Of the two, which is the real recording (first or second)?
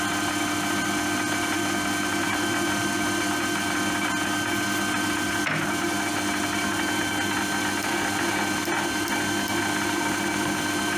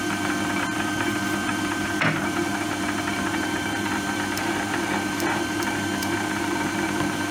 first